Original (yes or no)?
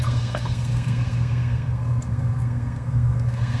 no